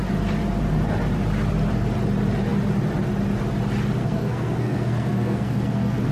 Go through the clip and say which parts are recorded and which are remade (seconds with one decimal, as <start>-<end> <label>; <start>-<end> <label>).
0.0-4.0 recorded; 4.0-6.1 remade